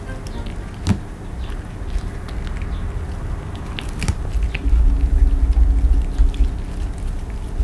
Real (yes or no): yes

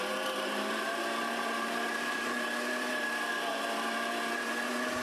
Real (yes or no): no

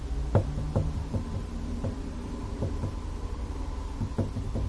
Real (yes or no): yes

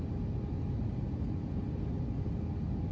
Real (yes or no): yes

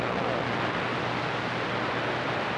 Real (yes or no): yes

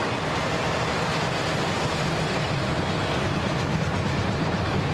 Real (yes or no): yes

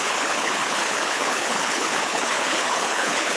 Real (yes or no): no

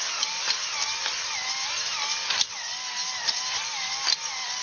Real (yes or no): yes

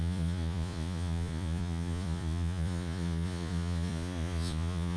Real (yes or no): no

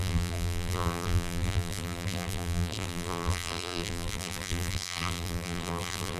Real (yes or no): no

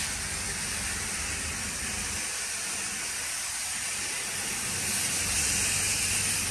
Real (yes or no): yes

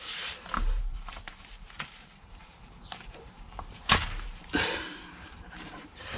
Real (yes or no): no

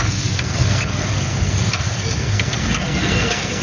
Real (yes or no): no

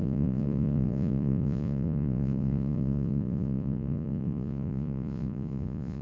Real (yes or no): no